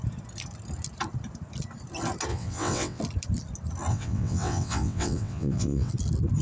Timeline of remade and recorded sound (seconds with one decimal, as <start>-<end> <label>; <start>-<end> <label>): 0.0-2.3 recorded; 2.3-3.0 remade; 3.0-3.9 recorded; 3.9-5.9 remade; 5.9-6.4 recorded